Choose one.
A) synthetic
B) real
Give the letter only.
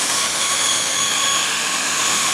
A